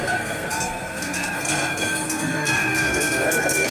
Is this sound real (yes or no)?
no